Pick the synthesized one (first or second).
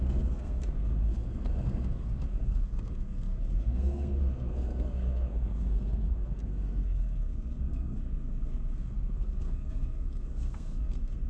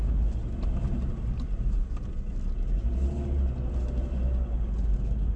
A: first